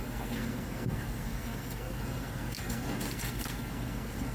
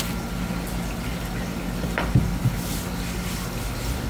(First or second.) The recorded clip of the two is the second